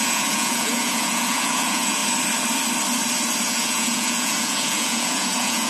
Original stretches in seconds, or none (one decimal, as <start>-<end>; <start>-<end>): 2.0-3.4